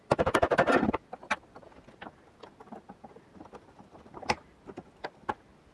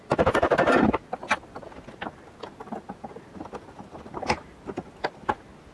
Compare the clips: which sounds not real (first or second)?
first